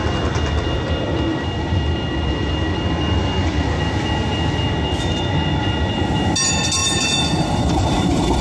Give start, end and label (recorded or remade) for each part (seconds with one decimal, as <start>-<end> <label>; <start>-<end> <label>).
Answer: 0.0-6.8 recorded; 6.8-8.4 remade

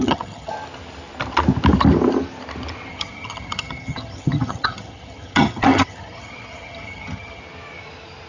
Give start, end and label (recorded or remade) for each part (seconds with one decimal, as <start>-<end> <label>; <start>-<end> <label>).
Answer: 0.0-0.5 remade; 0.5-2.9 recorded; 2.9-7.4 remade; 7.4-8.3 recorded

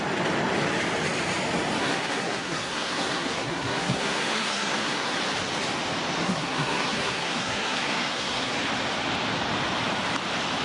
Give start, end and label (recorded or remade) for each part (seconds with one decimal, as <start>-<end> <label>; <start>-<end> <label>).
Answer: 0.0-1.8 recorded; 1.8-5.2 remade; 5.2-6.2 recorded; 6.2-8.5 remade; 8.5-10.6 recorded

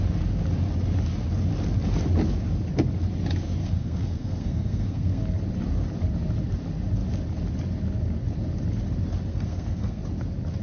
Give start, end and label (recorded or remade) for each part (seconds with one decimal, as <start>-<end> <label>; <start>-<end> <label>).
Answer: 0.0-3.6 recorded; 3.6-5.2 remade; 5.2-9.3 recorded; 9.3-10.0 remade; 10.0-10.6 recorded

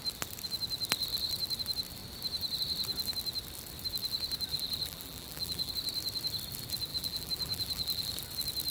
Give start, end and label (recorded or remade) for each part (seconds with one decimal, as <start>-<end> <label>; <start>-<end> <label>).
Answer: 0.0-4.5 recorded; 4.5-5.7 remade; 5.7-6.9 recorded; 6.9-8.1 remade; 8.1-8.7 recorded

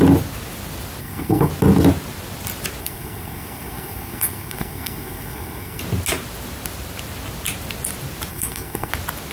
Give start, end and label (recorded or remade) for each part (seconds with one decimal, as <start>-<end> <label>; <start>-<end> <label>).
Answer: 0.0-1.0 recorded; 1.0-1.5 remade; 1.5-2.8 recorded; 2.8-5.8 remade; 5.8-8.3 recorded; 8.3-8.9 remade; 8.9-9.3 recorded